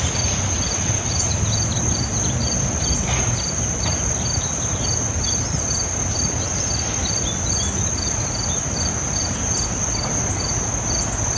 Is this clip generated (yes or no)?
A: no